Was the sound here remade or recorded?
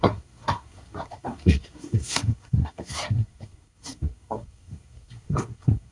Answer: remade